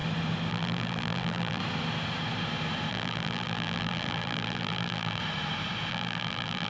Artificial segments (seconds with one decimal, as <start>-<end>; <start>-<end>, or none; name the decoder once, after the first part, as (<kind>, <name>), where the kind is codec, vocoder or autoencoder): 0.5-1.6 (vocoder, BigVGAN v2); 2.9-5.2; 5.9-6.7